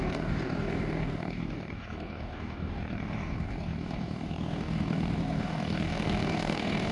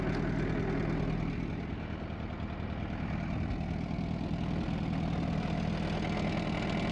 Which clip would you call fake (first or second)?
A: first